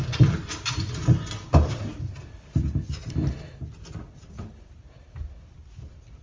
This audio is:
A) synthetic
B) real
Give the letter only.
B